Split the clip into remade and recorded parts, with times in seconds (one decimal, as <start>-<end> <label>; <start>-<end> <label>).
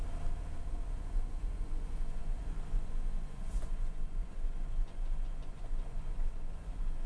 0.0-0.6 recorded; 0.6-7.1 remade